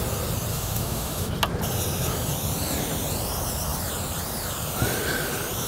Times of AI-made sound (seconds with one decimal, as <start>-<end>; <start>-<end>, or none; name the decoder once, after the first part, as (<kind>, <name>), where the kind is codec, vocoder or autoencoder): 0.5-1.3 (autoencoder, DAC-VAE)